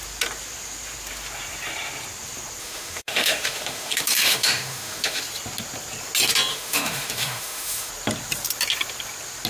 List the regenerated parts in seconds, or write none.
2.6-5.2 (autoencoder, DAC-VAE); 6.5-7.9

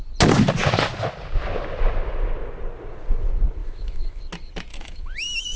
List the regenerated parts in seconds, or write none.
3.6-4.2 (autoencoder, DAC-VAE); 4.7-5.6

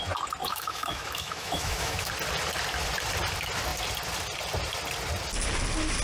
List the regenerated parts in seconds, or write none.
0.4-2.1 (autoencoder, DAC-VAE)

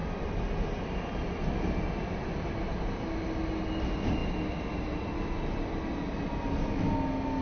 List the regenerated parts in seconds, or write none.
none